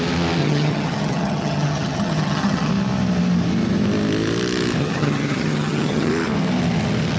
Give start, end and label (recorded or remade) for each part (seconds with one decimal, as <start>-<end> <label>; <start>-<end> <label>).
0.0-0.4 recorded; 0.4-2.7 remade; 2.7-4.8 recorded; 4.8-6.1 remade; 6.1-7.2 recorded